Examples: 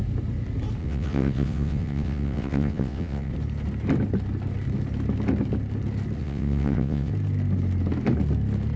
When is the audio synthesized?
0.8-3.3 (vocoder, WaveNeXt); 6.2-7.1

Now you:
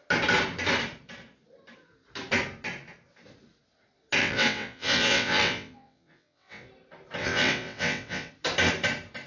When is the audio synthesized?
4.2-6.7 (vocoder, WaveNeXt); 7.2-8.3

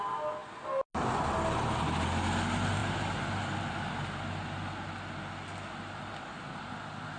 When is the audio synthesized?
none

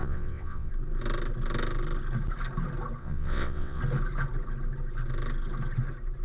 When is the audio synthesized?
0.0-0.7 (vocoder, WaveNeXt); 3.0-3.8